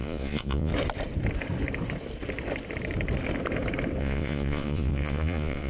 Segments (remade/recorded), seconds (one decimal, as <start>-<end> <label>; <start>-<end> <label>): 0.0-0.7 remade; 0.7-4.0 recorded; 4.0-5.7 remade